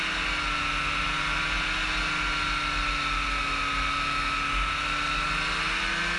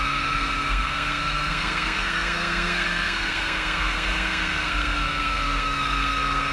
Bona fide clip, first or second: first